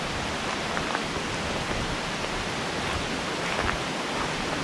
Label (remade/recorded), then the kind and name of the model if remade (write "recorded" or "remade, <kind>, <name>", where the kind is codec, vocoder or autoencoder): recorded